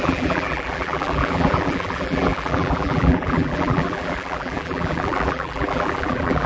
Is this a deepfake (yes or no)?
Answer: yes